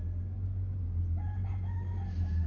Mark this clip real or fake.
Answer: real